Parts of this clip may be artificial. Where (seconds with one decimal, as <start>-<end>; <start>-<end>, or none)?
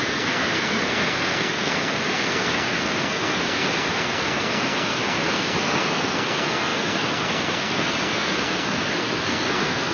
0.0-9.9